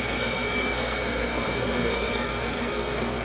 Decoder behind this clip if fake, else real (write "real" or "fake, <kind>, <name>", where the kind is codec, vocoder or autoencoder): fake, codec, SNAC